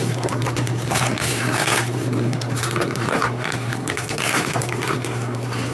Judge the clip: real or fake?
fake